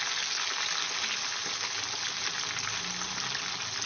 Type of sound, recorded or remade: recorded